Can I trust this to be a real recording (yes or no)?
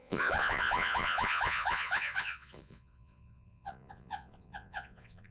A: no